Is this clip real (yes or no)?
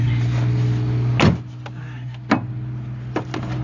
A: yes